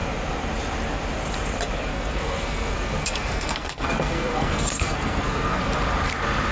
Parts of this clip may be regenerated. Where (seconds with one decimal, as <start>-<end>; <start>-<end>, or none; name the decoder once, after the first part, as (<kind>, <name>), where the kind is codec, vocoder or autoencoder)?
1.9-5.6 (codec, SNAC)